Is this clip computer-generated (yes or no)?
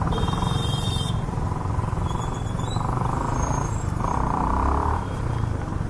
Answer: yes